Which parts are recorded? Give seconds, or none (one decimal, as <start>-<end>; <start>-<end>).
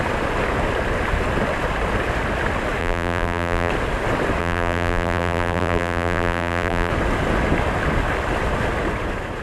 0.0-2.8; 3.7-4.4; 6.9-9.4